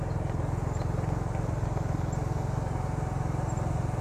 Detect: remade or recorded recorded